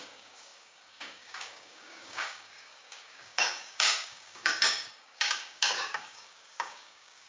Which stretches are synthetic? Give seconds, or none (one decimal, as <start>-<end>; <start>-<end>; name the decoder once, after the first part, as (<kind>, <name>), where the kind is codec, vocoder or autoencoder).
0.0-7.3 (codec, DAC)

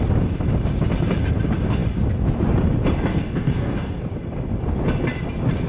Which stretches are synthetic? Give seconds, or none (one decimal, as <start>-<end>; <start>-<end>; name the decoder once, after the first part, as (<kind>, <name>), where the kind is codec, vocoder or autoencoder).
3.1-4.0 (codec, DAC)

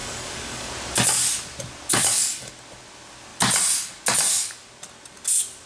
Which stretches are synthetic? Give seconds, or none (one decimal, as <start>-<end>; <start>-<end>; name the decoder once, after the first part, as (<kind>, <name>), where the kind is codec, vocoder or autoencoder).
0.0-0.7 (codec, DAC); 1.9-2.5

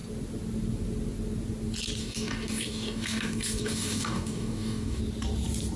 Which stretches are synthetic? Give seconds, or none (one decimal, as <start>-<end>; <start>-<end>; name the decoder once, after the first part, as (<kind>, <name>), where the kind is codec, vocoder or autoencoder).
2.0-5.0 (codec, DAC)

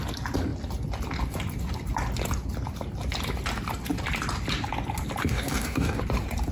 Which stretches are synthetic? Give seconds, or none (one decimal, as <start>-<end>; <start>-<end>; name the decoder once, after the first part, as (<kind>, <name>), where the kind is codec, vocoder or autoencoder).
5.2-6.0 (codec, DAC)

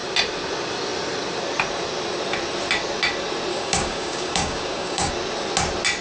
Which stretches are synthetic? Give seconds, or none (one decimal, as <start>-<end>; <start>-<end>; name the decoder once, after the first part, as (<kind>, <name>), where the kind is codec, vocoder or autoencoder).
3.5-5.1 (codec, DAC)